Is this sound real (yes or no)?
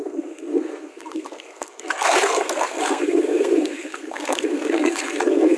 no